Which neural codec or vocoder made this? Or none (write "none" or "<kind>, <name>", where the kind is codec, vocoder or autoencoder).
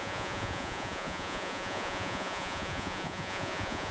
vocoder, Vocos